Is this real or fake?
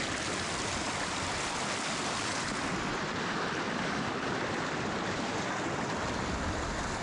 real